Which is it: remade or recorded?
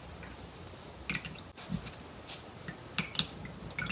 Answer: recorded